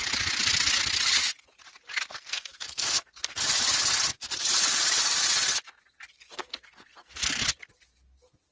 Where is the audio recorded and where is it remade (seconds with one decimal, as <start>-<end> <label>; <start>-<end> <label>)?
0.0-2.1 recorded; 2.1-3.4 remade; 3.4-6.1 recorded; 6.1-7.4 remade; 7.4-8.5 recorded